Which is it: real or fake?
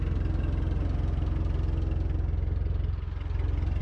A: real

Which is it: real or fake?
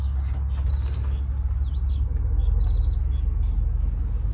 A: real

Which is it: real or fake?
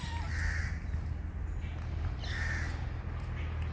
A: real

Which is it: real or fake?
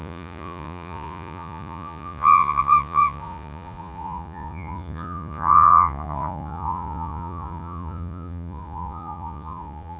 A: fake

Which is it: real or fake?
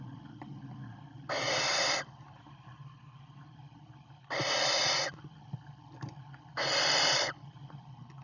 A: real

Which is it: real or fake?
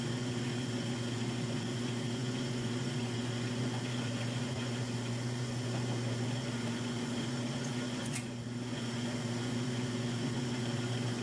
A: fake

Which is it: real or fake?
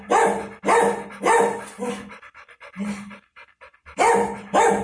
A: real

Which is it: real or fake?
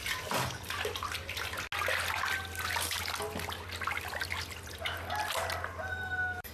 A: real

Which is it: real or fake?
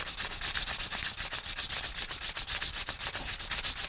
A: real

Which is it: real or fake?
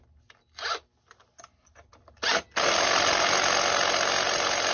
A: real